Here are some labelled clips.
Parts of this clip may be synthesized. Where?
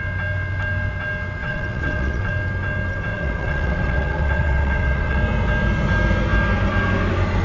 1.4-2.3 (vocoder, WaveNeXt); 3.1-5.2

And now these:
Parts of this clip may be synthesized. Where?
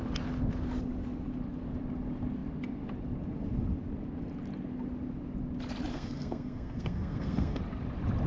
5.9-7.6 (codec, SNAC)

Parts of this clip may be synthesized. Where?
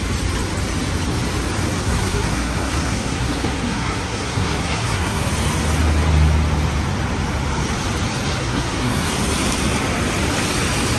1.8-5.3 (codec, SNAC); 8.4-9.1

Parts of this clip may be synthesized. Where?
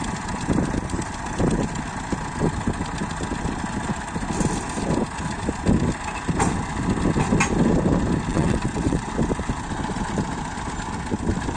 8.3-9.1 (vocoder, WaveNeXt)